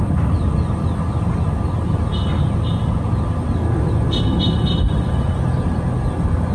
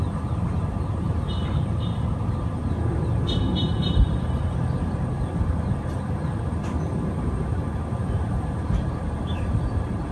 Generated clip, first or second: second